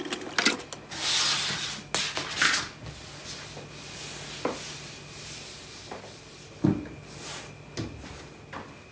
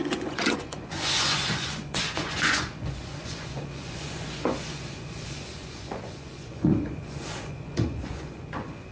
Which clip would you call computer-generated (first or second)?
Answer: second